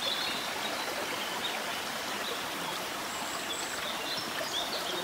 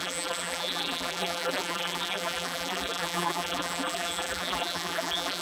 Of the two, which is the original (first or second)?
first